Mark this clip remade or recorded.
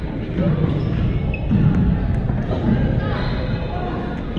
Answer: recorded